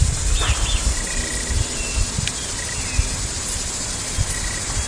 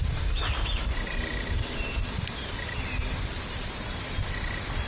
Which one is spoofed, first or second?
second